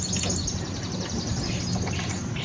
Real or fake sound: real